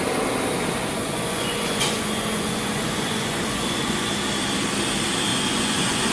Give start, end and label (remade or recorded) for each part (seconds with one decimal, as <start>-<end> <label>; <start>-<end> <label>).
0.0-1.0 recorded; 1.0-4.1 remade; 4.1-5.3 recorded; 5.3-6.1 remade